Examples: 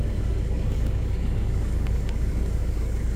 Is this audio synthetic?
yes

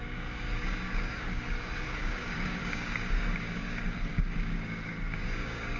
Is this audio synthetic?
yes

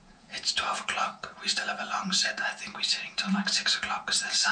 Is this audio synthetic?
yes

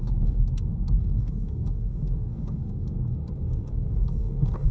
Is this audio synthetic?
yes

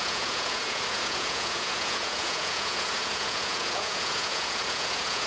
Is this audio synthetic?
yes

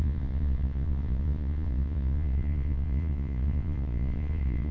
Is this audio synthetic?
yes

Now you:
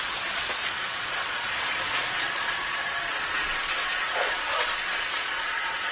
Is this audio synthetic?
yes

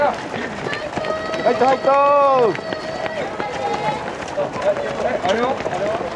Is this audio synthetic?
no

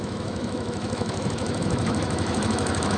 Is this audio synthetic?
yes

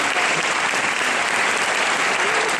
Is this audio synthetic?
yes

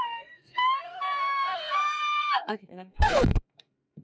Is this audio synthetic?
yes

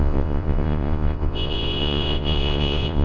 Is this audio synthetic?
yes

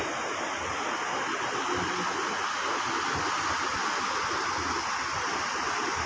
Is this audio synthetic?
no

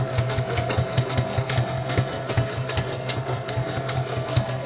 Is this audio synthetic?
yes